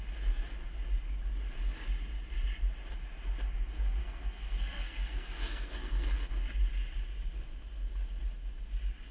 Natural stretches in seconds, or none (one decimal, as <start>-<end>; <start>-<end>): 0.0-4.0; 6.3-9.1